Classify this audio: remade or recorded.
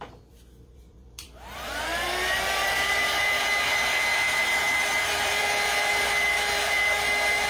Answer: remade